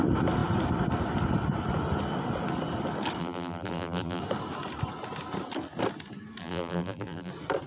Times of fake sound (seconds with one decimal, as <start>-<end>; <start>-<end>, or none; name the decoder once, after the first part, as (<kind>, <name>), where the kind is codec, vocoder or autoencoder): 3.2-4.2 (vocoder, BigVGAN v2); 6.4-7.3